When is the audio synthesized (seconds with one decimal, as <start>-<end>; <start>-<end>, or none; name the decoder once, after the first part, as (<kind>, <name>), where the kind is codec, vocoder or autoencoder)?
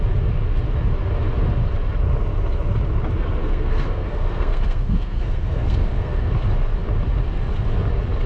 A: 3.4-6.3 (codec, SNAC)